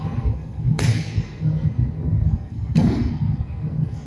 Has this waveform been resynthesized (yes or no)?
yes